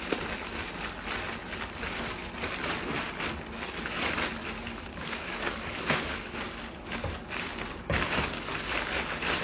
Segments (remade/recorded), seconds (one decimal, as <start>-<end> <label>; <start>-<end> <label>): 0.0-4.7 recorded; 4.7-7.1 remade; 7.1-7.5 recorded; 7.5-9.4 remade